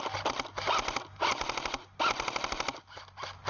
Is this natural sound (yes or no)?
yes